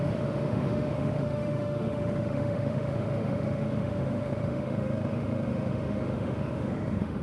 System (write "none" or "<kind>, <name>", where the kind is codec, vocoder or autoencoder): autoencoder, DAC-VAE